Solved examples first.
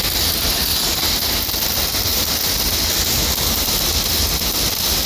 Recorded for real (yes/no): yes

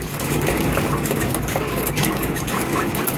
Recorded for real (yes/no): no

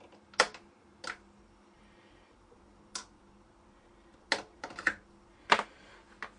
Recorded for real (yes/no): yes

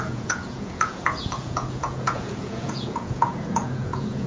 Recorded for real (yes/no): no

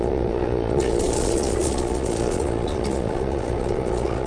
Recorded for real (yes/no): no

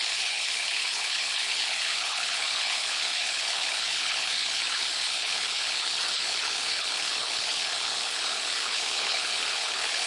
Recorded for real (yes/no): no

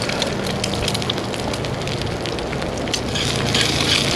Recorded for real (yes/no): yes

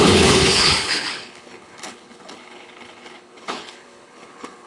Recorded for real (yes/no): no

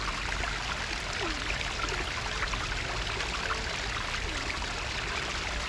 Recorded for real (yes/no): yes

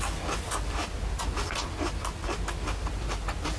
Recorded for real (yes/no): yes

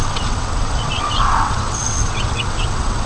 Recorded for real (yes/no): no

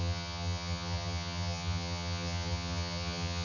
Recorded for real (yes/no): no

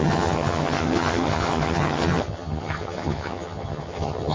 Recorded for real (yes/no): no